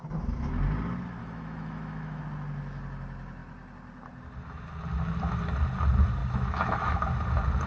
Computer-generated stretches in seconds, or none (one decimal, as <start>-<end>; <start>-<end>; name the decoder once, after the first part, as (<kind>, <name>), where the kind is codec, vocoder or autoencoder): 1.2-2.2 (autoencoder, DAC-VAE); 6.2-7.0